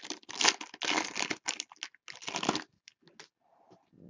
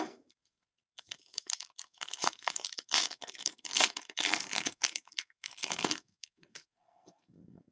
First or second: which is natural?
first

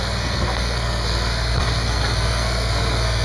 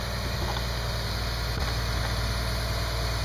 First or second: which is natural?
second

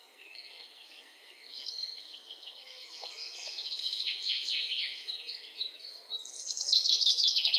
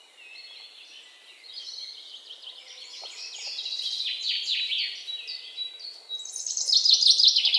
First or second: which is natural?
second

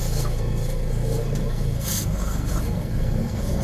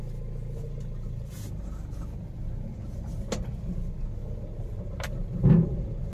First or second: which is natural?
second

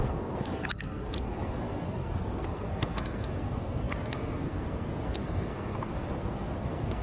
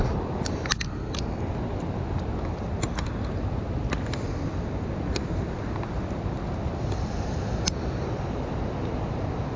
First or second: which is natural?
second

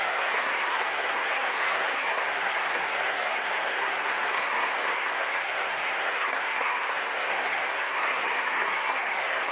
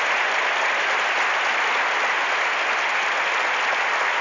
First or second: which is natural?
second